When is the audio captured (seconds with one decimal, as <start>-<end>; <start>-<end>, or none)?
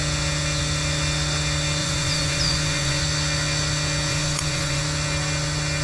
0.0-1.8; 3.0-4.1; 4.8-5.8